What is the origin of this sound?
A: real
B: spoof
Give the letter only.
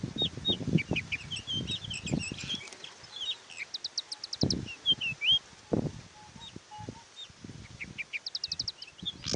A